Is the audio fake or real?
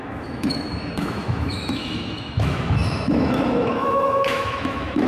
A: fake